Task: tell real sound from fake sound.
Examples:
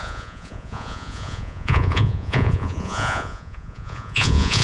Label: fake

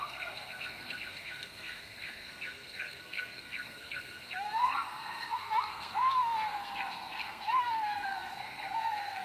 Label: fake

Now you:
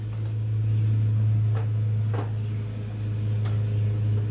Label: real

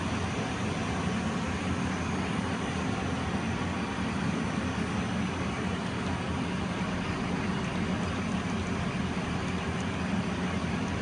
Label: real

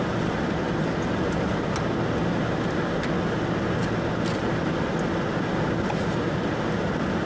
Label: real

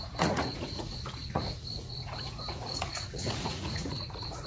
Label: fake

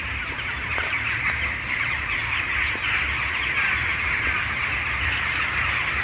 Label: real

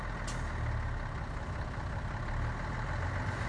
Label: real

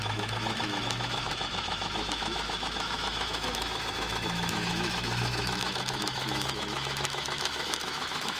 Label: fake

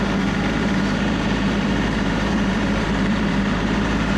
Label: fake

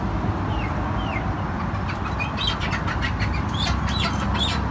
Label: real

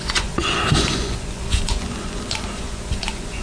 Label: fake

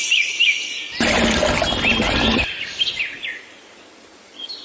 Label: fake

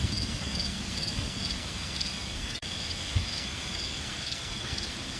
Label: fake